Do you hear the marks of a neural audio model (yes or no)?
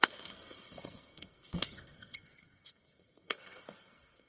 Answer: yes